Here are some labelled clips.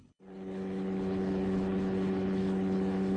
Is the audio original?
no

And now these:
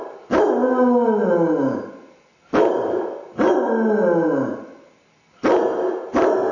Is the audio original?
yes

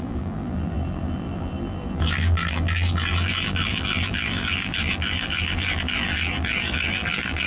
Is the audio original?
no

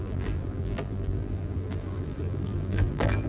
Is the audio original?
no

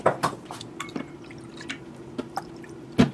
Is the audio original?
yes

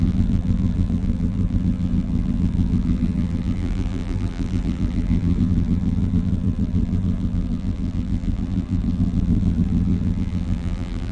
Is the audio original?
no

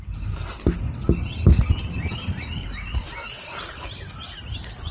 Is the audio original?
yes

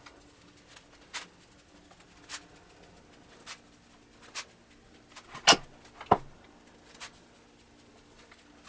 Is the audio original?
yes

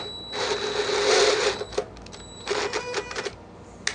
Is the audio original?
yes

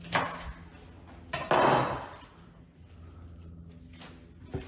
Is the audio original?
yes